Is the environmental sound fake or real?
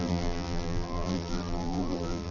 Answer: fake